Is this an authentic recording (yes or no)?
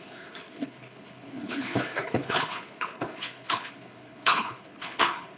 no